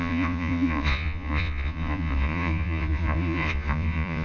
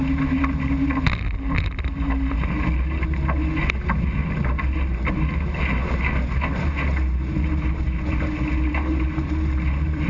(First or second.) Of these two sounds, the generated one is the first